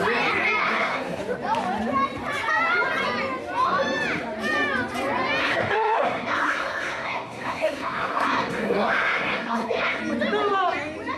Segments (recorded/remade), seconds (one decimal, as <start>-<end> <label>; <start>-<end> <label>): 0.0-0.6 recorded; 0.6-1.2 remade; 1.2-5.4 recorded; 5.4-10.0 remade; 10.0-11.2 recorded